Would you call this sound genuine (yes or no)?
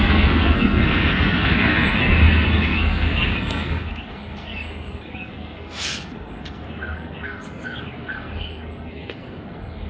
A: no